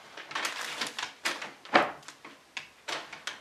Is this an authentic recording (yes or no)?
yes